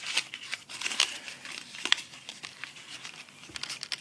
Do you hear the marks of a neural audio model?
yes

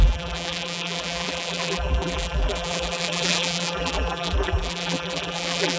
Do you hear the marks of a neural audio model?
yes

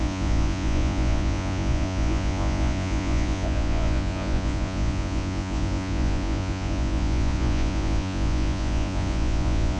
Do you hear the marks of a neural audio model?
yes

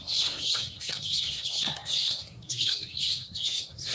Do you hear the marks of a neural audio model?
yes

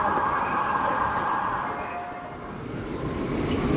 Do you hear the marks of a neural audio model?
no